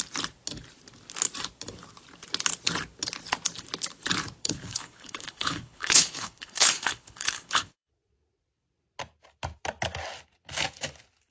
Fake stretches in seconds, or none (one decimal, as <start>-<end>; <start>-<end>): 4.4-7.9